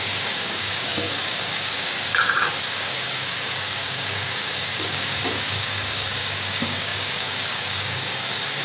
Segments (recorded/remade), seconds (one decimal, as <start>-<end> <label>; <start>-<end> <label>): 0.0-8.6 remade